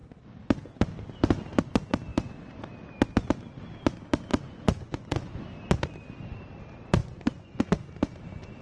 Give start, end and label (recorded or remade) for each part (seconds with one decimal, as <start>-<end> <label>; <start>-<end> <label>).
0.0-4.3 recorded; 4.3-5.3 remade; 5.3-7.0 recorded; 7.0-7.9 remade; 7.9-8.6 recorded